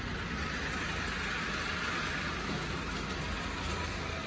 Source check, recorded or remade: recorded